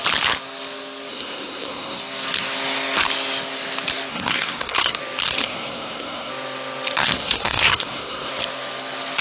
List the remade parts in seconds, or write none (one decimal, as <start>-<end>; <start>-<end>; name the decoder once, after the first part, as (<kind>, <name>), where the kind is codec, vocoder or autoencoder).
1.1-2.0 (codec, SNAC); 4.1-5.0; 5.4-6.3; 7.0-8.3